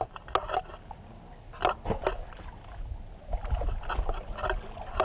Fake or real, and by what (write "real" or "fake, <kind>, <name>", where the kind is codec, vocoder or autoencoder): real